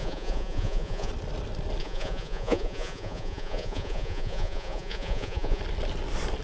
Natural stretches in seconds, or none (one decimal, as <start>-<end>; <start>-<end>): 1.1-1.8; 5.6-6.4

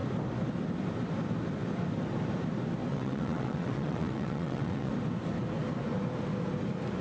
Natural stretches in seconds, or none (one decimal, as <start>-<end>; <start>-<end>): 0.0-2.9; 4.9-7.0